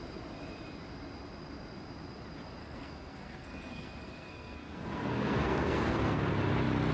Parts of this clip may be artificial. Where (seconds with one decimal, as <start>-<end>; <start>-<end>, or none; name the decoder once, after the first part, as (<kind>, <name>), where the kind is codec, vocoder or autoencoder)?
2.6-6.3 (codec, SNAC)